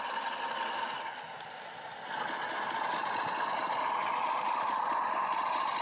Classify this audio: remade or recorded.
recorded